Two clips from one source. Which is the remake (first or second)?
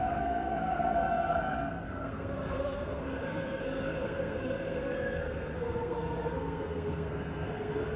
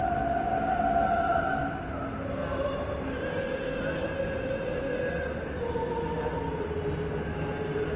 first